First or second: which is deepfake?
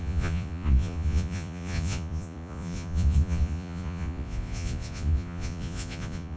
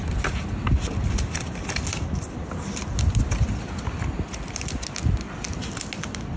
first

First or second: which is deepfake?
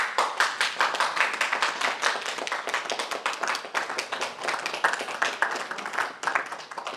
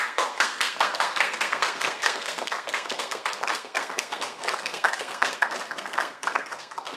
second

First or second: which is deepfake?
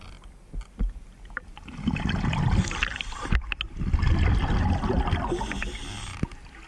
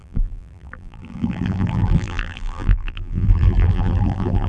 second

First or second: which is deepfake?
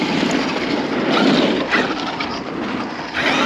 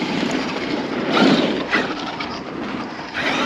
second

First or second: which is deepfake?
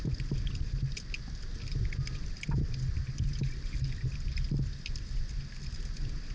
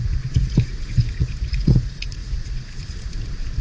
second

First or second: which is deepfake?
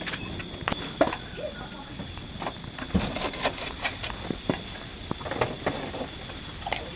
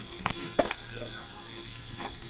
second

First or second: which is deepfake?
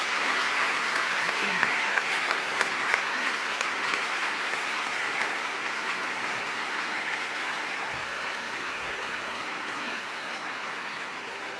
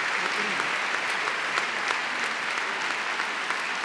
first